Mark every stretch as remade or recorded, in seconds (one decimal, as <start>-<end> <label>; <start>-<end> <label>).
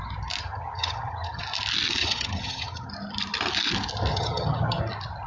0.0-0.4 recorded; 0.4-1.4 remade; 1.4-2.0 recorded; 2.0-2.9 remade; 2.9-4.1 recorded; 4.1-4.8 remade; 4.8-5.3 recorded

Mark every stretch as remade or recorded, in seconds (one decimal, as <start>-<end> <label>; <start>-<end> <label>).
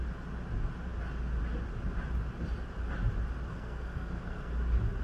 0.0-3.5 recorded; 3.5-4.5 remade; 4.5-5.0 recorded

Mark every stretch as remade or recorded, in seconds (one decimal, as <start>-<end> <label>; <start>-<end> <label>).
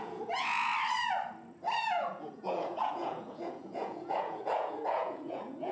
0.0-0.7 remade; 0.7-1.9 recorded; 1.9-5.7 remade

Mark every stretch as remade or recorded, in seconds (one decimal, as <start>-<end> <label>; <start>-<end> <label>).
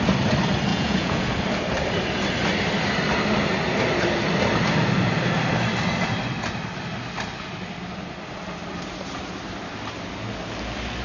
0.0-0.7 recorded; 0.7-1.3 remade; 1.3-11.0 recorded